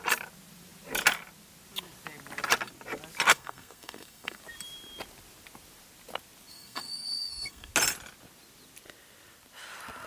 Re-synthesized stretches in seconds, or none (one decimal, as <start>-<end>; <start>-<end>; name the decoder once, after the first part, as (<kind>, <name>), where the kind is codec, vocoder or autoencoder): 3.3-4.4 (codec, SNAC); 6.5-7.7